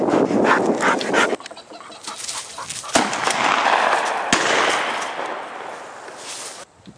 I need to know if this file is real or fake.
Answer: real